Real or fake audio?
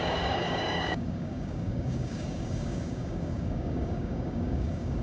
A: fake